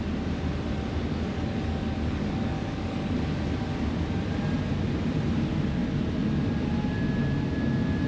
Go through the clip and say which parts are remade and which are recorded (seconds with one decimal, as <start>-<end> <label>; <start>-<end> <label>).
0.0-1.0 recorded; 1.0-3.1 remade; 3.1-8.1 recorded

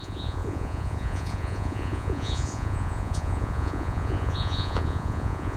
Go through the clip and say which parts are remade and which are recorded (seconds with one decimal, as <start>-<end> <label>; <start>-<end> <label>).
0.0-5.6 remade

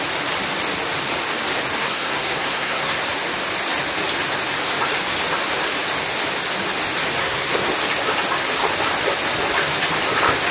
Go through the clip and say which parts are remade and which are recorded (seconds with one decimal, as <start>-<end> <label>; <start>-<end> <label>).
0.0-1.8 recorded; 1.8-3.0 remade; 3.0-7.2 recorded; 7.2-7.7 remade; 7.7-10.5 recorded

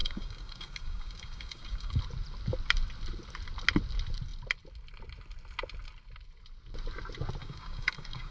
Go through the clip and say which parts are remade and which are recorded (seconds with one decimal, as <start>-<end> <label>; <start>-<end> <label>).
0.0-2.0 remade; 2.0-7.4 recorded; 7.4-8.3 remade